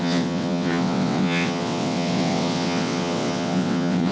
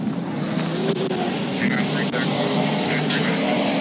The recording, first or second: second